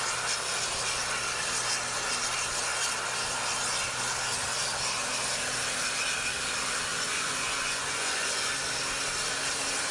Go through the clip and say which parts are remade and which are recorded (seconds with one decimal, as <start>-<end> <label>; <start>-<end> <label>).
0.0-6.9 recorded; 6.9-8.5 remade; 8.5-9.9 recorded